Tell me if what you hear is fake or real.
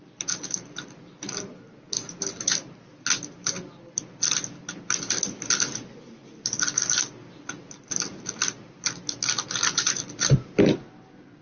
fake